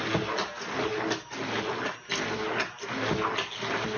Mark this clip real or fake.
real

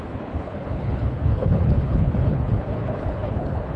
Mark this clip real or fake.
fake